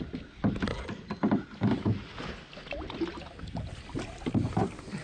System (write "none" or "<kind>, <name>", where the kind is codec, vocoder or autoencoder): none